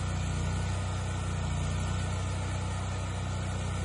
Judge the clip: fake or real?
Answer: real